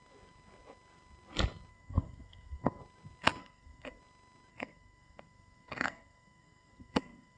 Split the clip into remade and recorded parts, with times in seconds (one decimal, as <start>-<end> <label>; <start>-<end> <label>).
0.0-1.7 recorded; 1.7-2.8 remade; 2.8-3.4 recorded; 3.4-4.0 remade; 4.0-4.5 recorded; 4.5-7.4 remade